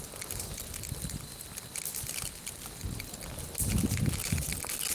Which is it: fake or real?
real